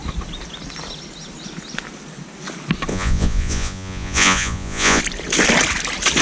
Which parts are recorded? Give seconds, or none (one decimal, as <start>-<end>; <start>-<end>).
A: 0.0-2.9; 5.0-6.2